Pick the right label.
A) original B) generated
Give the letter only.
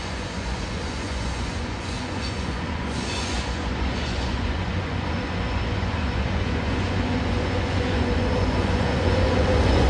B